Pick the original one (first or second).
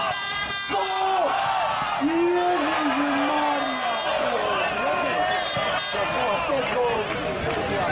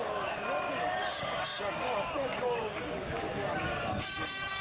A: first